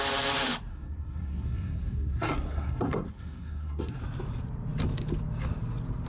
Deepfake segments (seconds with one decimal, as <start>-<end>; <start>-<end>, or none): 0.7-4.0